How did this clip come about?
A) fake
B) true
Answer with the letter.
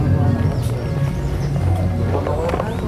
B